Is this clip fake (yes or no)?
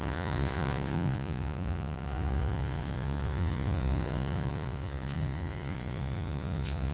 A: yes